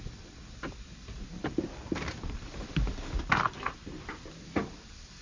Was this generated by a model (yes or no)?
no